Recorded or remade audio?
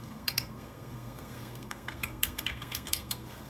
remade